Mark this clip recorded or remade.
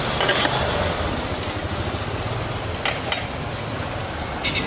recorded